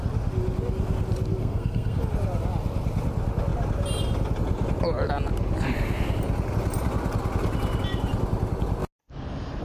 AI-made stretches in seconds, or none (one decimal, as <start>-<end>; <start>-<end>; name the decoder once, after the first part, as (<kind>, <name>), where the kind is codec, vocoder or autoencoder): 1.4-2.0 (codec, SNAC)